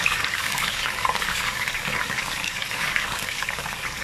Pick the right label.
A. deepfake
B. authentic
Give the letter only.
A